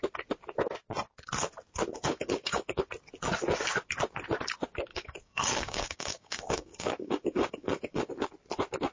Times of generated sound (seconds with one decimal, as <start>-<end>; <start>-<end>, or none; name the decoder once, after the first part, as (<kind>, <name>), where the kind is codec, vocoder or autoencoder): 1.9-2.9 (codec, DAC); 4.9-8.1